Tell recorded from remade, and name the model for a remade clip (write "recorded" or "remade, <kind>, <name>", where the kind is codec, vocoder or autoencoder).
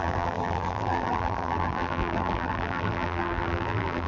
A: remade, vocoder, BigVGAN v2